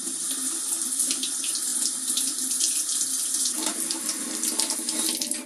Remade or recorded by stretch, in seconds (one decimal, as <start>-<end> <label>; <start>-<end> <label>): 0.0-1.7 remade; 1.7-3.2 recorded; 3.2-3.7 remade; 3.7-5.0 recorded; 5.0-5.5 remade